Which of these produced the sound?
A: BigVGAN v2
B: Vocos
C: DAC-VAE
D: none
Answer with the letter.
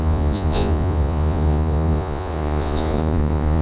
B